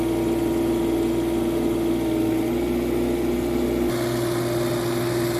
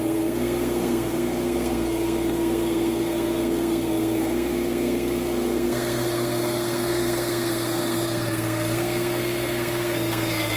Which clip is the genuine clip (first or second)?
first